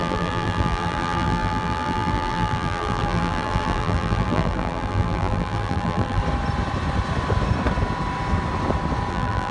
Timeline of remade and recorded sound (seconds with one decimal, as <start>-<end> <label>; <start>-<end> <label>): 0.0-6.2 remade; 6.2-9.1 recorded; 9.1-9.5 remade